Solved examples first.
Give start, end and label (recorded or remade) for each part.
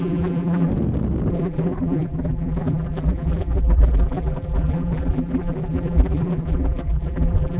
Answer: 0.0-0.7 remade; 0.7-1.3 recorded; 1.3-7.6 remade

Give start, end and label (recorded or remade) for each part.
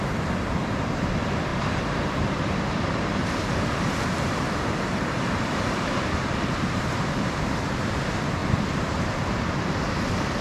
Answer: 0.0-8.4 remade; 8.4-10.4 recorded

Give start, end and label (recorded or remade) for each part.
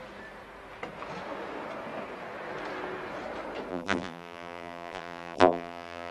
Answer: 0.0-3.7 recorded; 3.7-6.1 remade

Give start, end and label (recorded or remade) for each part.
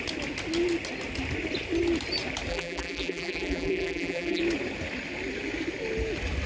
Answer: 0.0-2.5 recorded; 2.5-4.4 remade; 4.4-6.5 recorded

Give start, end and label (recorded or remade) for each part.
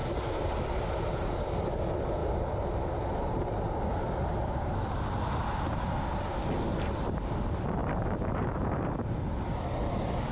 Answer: 0.0-1.8 remade; 1.8-2.2 recorded; 2.2-4.5 remade; 4.5-7.8 recorded; 7.8-8.9 remade; 8.9-10.3 recorded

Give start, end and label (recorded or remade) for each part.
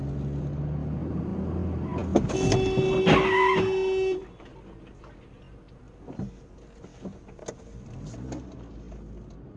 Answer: 0.0-9.6 recorded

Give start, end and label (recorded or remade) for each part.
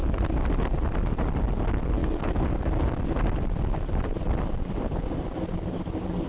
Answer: 0.0-0.9 remade; 0.9-2.0 recorded; 2.0-5.2 remade; 5.2-6.3 recorded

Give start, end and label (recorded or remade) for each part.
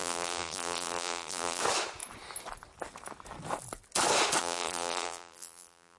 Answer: 0.0-1.6 remade; 1.6-4.4 recorded; 4.4-6.0 remade